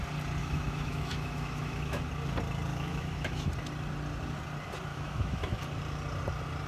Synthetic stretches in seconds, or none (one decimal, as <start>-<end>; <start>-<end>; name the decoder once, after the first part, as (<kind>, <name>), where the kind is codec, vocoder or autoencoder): 0.4-2.0 (autoencoder, DAC-VAE); 2.7-3.5; 4.9-5.6